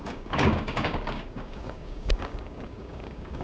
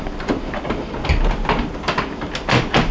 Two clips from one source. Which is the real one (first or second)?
second